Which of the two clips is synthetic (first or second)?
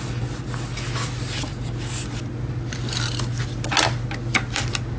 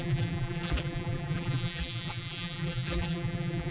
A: second